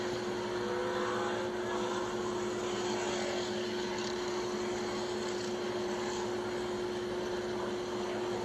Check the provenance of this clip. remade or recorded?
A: recorded